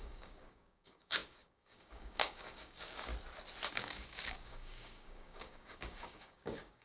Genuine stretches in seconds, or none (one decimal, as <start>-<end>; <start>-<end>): 3.1-3.7